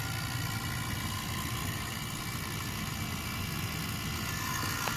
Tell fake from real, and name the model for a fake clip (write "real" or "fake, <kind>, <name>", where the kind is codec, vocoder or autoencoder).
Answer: real